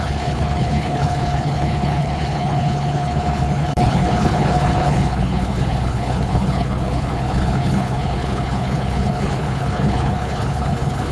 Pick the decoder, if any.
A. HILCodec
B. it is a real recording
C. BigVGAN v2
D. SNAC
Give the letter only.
A